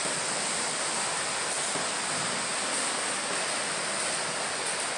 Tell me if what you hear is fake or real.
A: real